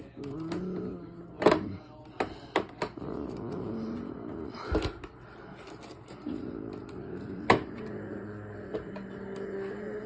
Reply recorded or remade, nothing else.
recorded